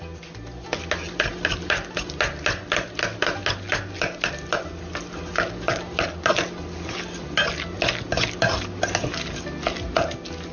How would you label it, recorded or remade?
recorded